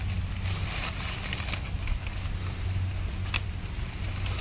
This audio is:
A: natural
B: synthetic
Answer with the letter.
A